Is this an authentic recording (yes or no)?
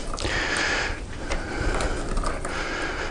yes